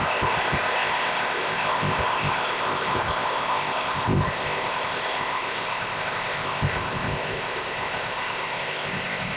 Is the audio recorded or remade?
remade